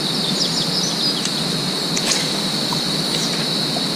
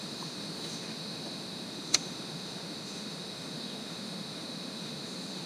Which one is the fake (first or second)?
second